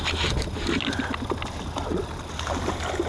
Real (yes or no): yes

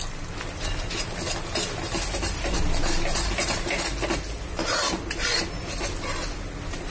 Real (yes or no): yes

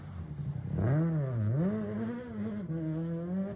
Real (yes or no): yes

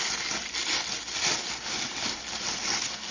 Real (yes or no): yes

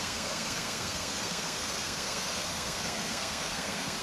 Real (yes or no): no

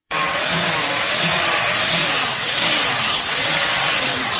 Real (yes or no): no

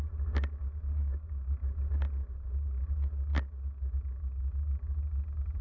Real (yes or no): yes